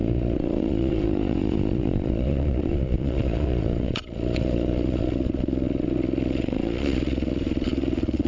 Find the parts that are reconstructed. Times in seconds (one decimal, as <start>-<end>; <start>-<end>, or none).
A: 0.0-8.3